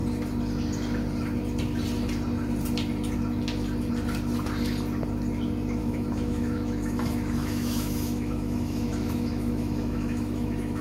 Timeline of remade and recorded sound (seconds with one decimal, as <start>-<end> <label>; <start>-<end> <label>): 0.0-5.8 recorded; 5.8-10.8 remade